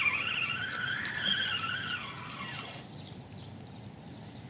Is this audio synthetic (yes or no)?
no